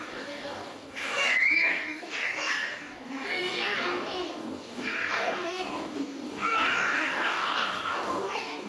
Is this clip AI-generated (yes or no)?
yes